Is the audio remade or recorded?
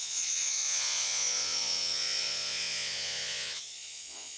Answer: remade